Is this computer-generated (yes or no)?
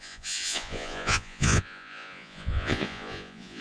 yes